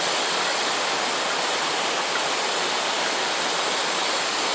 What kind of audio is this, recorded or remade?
recorded